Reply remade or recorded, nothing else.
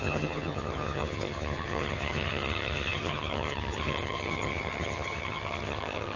remade